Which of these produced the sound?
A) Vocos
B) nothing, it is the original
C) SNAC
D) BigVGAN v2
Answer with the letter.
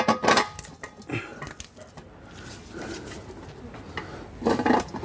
B